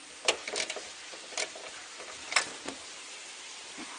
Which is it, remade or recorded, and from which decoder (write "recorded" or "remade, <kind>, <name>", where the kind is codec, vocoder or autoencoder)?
recorded